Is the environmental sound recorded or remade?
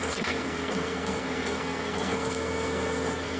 remade